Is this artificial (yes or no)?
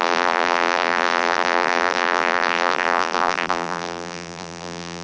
yes